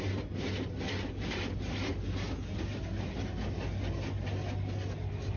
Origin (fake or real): real